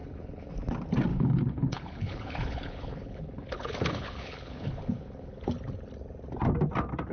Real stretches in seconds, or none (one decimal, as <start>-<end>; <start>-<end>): 0.5-1.1; 5.4-7.1